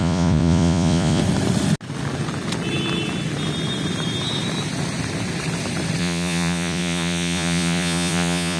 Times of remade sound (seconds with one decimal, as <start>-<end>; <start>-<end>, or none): 0.0-1.2; 6.0-8.6